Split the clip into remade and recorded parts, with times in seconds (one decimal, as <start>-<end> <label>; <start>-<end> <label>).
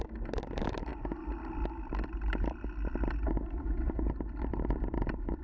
0.0-5.4 recorded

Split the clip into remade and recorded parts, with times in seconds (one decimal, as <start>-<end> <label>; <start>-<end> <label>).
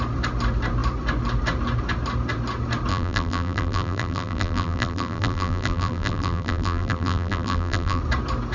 0.0-2.9 recorded; 2.9-8.0 remade; 8.0-8.5 recorded